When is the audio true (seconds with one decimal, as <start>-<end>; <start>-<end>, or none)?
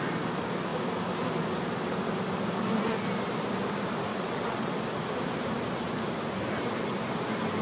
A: 0.0-4.1; 4.7-7.6